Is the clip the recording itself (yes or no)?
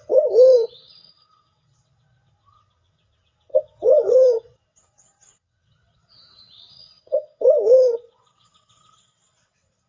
no